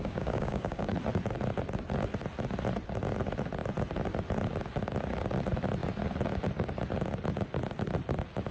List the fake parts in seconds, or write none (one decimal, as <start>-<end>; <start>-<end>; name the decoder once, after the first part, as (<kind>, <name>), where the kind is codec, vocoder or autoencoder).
0.0-0.9 (codec, DAC)